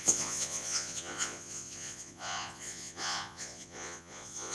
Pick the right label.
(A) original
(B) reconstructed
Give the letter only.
B